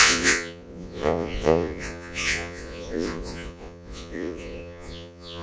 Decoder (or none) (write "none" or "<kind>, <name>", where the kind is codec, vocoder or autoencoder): vocoder, Vocos